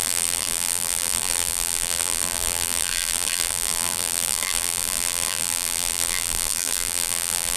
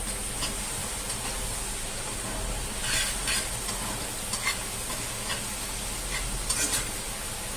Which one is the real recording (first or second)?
second